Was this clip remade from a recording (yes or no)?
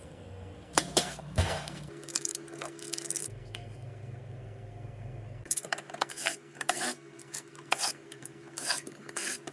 yes